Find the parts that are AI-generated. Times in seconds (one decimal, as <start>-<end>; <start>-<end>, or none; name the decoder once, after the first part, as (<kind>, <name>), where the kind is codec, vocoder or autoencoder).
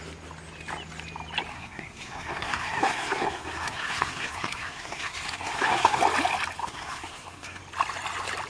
1.5-6.0 (codec, SNAC); 6.6-7.6